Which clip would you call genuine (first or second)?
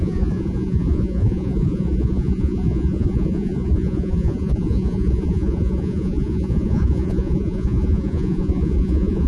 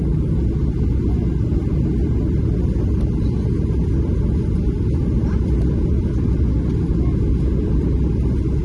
second